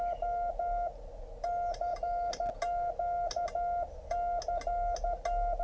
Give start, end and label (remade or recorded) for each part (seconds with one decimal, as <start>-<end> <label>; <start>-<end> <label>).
0.0-5.6 recorded